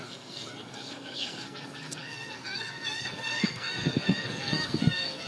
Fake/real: fake